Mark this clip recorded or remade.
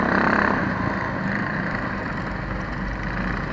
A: recorded